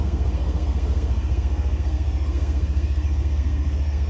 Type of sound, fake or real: fake